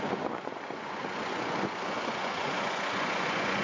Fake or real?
fake